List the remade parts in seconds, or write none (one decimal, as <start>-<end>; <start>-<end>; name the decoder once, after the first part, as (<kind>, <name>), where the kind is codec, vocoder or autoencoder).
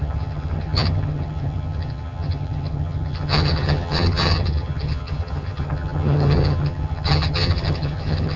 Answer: 0.0-8.4 (vocoder, HiFi-GAN)